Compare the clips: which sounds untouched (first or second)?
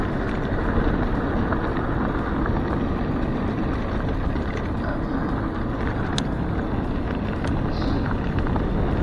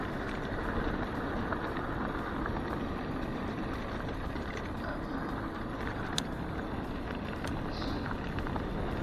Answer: first